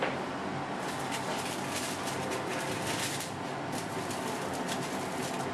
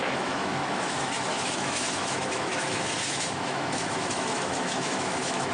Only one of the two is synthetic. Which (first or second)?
second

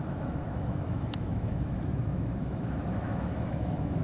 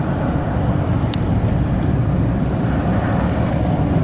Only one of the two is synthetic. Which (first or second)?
first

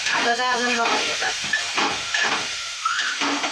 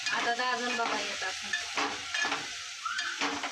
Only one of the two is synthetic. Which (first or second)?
first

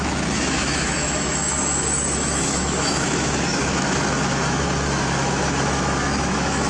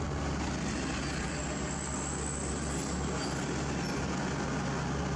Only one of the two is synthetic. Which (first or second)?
first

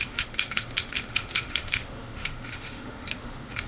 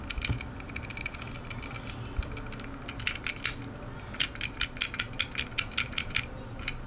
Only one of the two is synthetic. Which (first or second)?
first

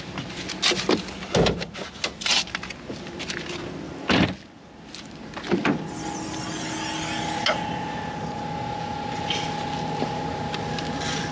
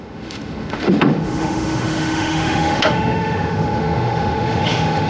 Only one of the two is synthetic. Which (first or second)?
second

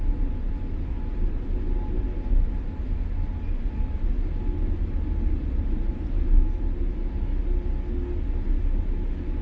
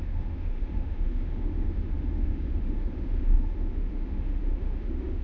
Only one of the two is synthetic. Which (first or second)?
second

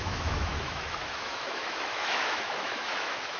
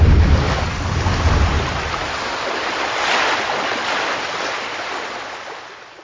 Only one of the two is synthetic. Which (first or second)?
first